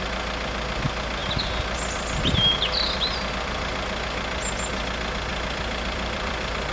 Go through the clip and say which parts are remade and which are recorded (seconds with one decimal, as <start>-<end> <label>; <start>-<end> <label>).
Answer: 0.0-5.3 recorded; 5.3-6.7 remade